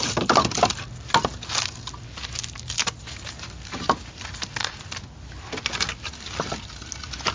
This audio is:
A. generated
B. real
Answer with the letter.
B